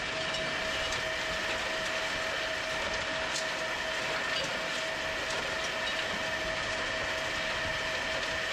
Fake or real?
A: real